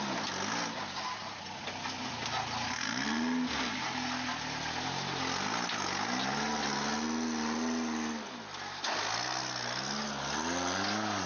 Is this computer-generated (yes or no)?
no